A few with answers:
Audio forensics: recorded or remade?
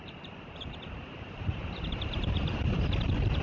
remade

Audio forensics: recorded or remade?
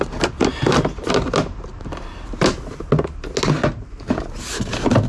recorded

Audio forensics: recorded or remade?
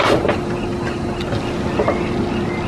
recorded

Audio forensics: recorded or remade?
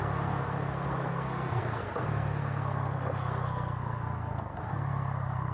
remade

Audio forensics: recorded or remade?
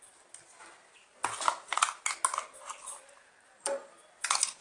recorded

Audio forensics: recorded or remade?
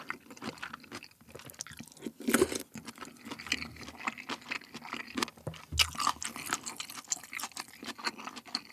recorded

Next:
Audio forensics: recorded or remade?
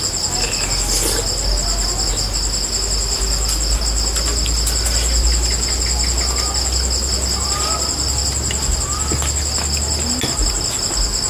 recorded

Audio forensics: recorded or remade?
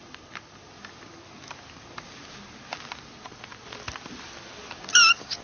recorded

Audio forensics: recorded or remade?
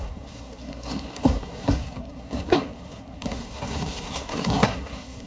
remade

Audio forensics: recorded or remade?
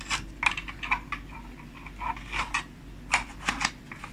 recorded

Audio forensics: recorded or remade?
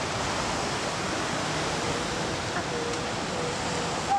recorded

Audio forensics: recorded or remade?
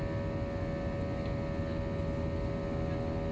recorded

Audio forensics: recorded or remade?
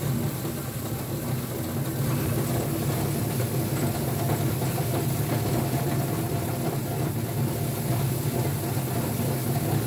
recorded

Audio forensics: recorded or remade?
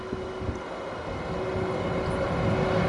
recorded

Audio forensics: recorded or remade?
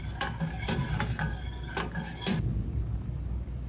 recorded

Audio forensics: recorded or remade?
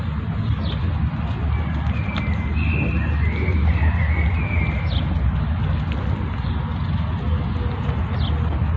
recorded